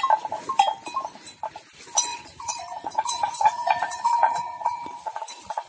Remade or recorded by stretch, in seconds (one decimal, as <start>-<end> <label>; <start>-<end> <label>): 0.0-2.1 recorded; 2.1-5.7 remade